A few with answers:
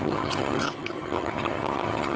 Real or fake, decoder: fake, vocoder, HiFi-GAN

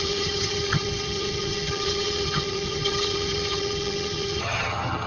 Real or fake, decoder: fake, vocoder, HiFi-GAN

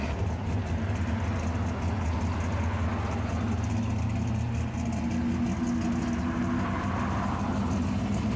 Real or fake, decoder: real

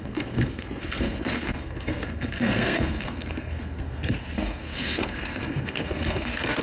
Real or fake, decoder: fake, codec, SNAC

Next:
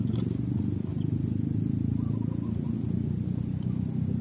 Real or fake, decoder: real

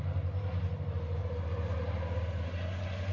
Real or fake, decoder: real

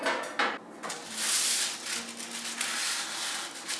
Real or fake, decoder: real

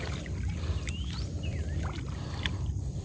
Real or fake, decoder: real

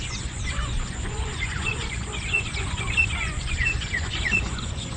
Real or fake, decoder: fake, vocoder, Vocos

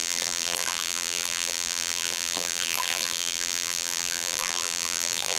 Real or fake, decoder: fake, vocoder, BigVGAN v2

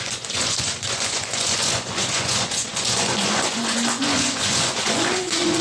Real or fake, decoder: fake, vocoder, Vocos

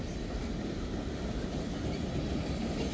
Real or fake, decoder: real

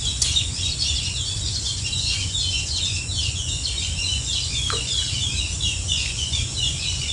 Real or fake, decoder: fake, vocoder, Vocos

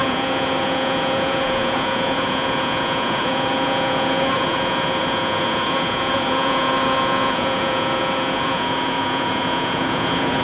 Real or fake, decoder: fake, vocoder, Vocos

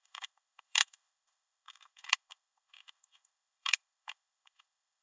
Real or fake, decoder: fake, autoencoder, DAC-VAE